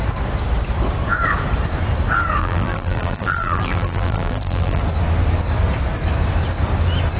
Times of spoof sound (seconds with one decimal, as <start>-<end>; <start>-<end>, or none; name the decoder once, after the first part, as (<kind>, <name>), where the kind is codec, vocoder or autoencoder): 2.4-4.8 (vocoder, BigVGAN v2)